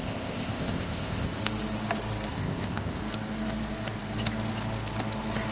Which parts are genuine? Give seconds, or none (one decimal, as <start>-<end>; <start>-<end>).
1.4-2.3; 3.0-5.5